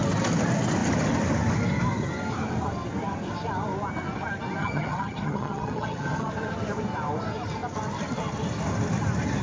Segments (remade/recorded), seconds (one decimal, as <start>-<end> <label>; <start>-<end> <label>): 0.0-4.6 recorded; 4.6-6.3 remade; 6.3-9.4 recorded